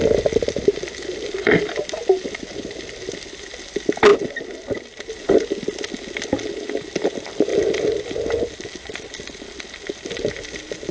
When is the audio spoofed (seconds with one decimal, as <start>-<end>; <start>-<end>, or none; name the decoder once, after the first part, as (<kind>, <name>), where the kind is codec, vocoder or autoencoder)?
none